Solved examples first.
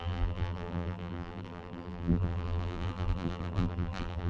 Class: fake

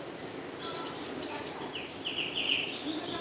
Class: real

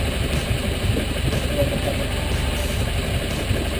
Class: real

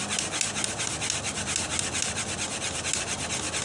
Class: real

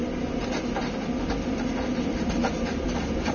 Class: real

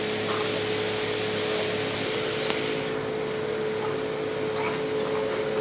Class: real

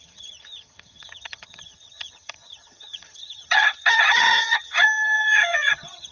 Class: fake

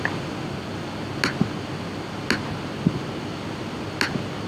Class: real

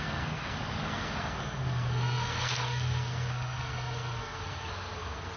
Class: fake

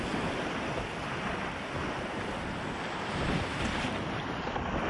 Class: real